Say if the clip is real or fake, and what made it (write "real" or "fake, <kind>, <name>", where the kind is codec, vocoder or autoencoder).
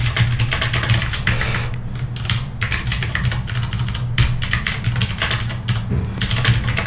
real